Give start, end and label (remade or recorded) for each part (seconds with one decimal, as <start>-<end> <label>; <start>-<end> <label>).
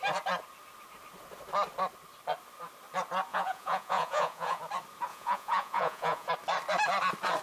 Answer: 0.0-3.3 recorded; 3.3-4.6 remade; 4.6-5.1 recorded; 5.1-6.3 remade; 6.3-7.4 recorded